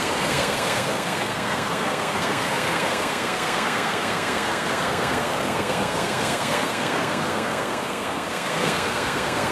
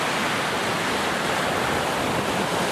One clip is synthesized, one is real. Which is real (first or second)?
second